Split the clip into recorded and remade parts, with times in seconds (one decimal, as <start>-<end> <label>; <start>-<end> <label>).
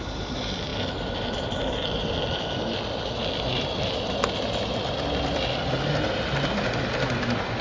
0.0-7.6 recorded